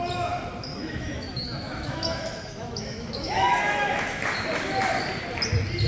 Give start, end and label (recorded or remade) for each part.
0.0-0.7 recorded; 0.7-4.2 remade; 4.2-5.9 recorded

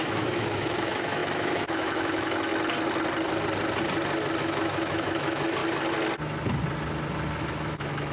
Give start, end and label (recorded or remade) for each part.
0.0-2.5 remade; 2.5-4.4 recorded; 4.4-5.6 remade; 5.6-7.4 recorded; 7.4-8.1 remade

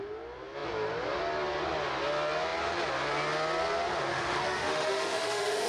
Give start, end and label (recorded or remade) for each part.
0.0-4.1 recorded; 4.1-5.7 remade

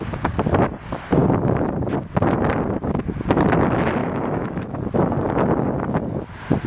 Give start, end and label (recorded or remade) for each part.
0.0-4.0 recorded; 4.0-4.8 remade; 4.8-6.7 recorded

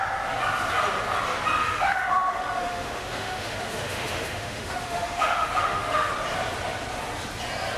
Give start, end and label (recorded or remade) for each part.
0.0-1.6 recorded; 1.6-6.1 remade; 6.1-7.8 recorded